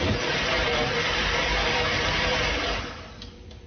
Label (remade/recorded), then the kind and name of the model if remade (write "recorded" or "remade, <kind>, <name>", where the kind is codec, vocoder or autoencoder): recorded